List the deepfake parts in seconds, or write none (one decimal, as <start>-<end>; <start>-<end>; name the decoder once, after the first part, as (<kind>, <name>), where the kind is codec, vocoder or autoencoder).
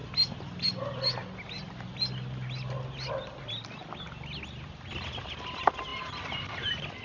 none